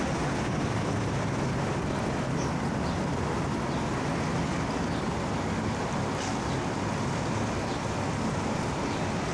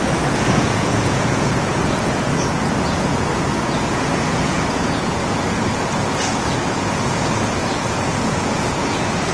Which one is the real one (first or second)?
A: first